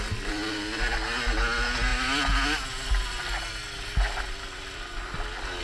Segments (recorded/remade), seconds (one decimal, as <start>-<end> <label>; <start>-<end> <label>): 0.0-5.6 recorded